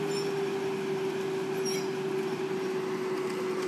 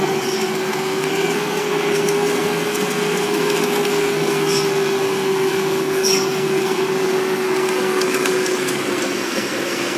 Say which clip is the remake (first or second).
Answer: second